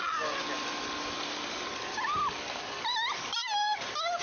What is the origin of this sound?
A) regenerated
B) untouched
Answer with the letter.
B